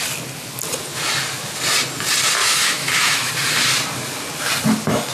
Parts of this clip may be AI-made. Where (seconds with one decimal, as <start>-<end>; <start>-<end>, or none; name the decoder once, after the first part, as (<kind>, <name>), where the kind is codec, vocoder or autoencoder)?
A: 2.4-3.3 (autoencoder, DAC-VAE)